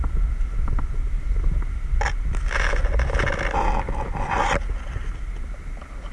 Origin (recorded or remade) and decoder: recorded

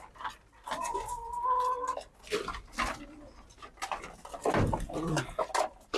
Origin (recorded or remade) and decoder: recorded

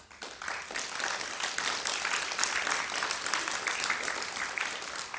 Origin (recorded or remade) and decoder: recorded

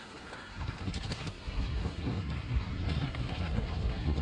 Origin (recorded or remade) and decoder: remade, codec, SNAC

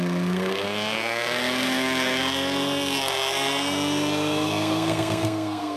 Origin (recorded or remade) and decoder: remade, codec, SNAC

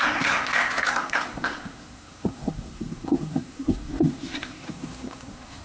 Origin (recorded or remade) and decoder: remade, codec, SNAC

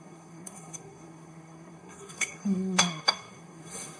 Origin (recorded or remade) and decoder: remade, codec, SNAC